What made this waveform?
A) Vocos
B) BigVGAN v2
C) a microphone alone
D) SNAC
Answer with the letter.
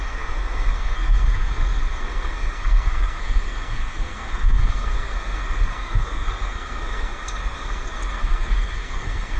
D